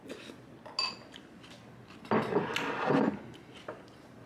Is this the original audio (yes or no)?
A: yes